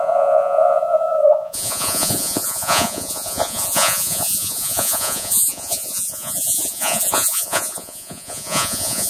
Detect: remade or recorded remade